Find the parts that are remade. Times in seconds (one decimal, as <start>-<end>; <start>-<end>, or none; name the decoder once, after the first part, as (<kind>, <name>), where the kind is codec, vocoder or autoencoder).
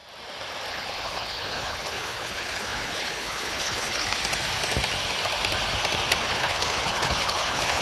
0.7-4.2 (codec, HILCodec); 6.2-7.8